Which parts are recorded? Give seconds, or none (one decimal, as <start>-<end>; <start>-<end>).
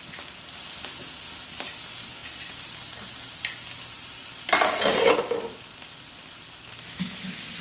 0.0-7.6